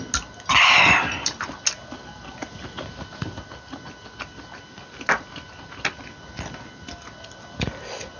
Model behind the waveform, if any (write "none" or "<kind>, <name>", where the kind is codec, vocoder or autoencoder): none